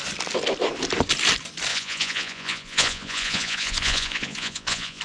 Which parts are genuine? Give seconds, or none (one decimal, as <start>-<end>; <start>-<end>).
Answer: 0.0-1.7